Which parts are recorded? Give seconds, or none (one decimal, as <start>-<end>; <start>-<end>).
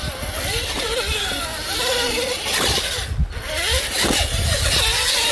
0.0-5.3